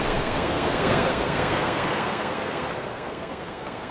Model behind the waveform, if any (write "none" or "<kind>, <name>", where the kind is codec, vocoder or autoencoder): codec, SNAC